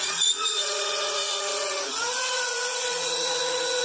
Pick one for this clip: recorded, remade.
remade